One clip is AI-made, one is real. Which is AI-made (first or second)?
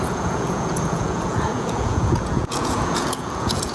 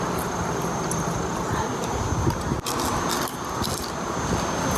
first